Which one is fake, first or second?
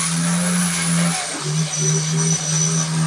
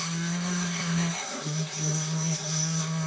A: second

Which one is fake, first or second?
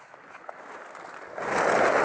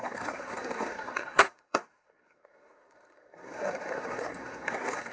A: second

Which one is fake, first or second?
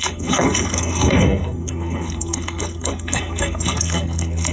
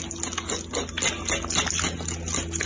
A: first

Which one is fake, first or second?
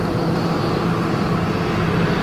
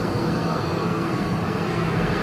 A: second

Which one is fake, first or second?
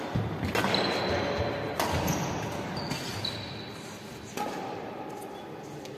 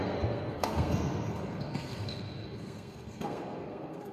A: second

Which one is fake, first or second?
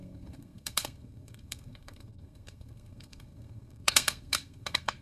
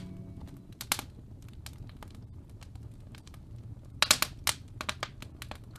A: first